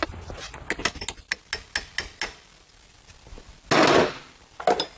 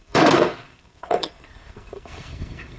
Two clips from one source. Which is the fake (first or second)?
second